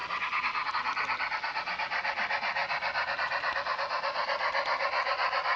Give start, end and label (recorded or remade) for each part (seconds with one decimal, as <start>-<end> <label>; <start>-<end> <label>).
0.0-5.6 recorded